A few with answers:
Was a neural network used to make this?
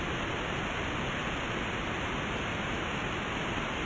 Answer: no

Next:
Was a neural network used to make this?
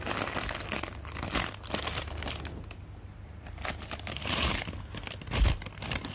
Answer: no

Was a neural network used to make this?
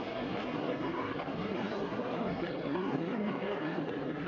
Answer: yes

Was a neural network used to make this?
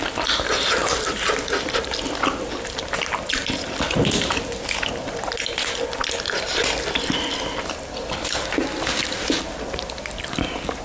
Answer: no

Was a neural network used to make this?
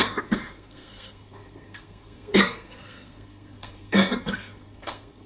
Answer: yes